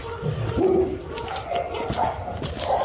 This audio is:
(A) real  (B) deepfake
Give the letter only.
A